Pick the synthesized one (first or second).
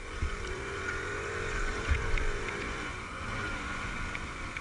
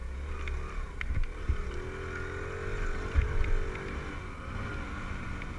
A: first